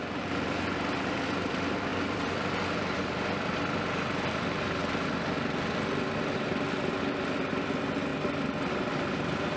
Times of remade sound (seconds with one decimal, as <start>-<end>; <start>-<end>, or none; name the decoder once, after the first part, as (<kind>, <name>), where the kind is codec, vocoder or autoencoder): 0.0-4.8 (vocoder, BigVGAN v2); 7.0-8.1; 8.7-9.6